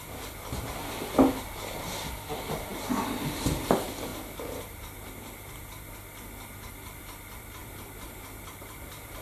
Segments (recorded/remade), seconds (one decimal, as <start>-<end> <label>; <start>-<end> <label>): 0.0-0.8 remade; 0.8-1.8 recorded; 1.8-2.7 remade; 2.7-3.3 recorded; 3.3-4.1 remade; 4.1-5.2 recorded; 5.2-9.2 remade